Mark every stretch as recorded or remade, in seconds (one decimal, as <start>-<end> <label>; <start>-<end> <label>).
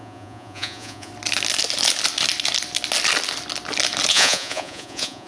0.0-1.1 remade; 1.1-4.1 recorded; 4.1-5.3 remade